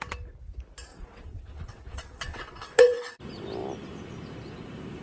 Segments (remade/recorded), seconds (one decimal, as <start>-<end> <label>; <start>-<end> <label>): 0.0-0.9 recorded; 0.9-3.2 remade; 3.2-5.0 recorded